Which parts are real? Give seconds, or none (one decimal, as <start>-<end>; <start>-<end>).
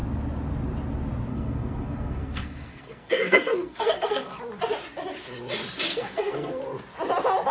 0.0-1.3; 4.4-5.9; 6.6-7.5